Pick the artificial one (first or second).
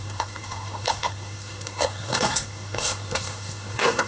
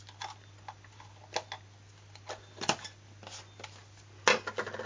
first